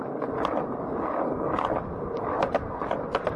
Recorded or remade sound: recorded